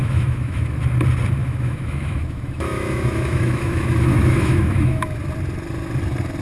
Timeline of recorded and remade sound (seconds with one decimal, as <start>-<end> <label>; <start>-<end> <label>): 0.0-0.8 remade; 0.8-1.4 recorded; 1.4-5.2 remade; 5.2-6.4 recorded